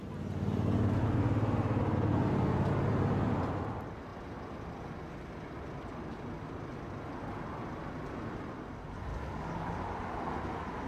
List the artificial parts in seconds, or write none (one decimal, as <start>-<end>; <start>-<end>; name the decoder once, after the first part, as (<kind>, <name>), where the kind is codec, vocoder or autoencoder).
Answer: 9.1-9.8 (codec, DAC)